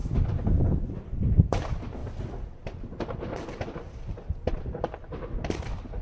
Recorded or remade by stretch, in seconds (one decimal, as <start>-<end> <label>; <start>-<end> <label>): 0.0-2.0 recorded; 2.0-4.5 remade; 4.5-6.0 recorded